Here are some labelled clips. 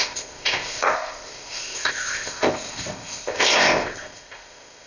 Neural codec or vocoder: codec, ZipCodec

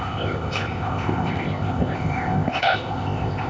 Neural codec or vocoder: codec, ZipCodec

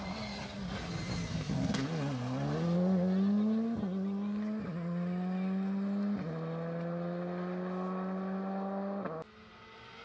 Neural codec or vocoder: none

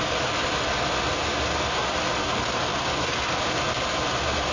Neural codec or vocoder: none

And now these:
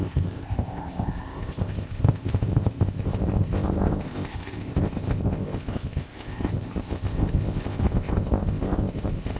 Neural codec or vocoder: codec, ZipCodec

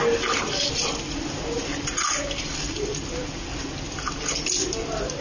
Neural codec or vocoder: none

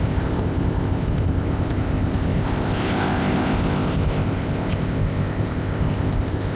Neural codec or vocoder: codec, ZipCodec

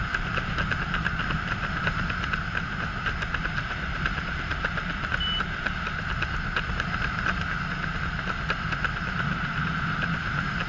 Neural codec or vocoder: none